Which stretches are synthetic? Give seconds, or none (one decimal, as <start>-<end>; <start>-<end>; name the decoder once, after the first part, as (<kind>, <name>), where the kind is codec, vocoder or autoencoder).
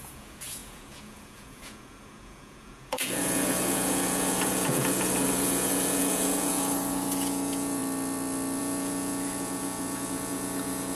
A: 0.0-7.8 (vocoder, Vocos); 8.6-11.0